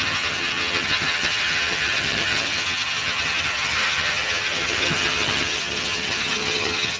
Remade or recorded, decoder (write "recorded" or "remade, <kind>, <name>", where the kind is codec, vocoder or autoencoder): remade, vocoder, HiFi-GAN